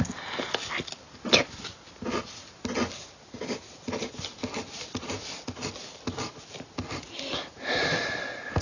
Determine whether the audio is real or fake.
real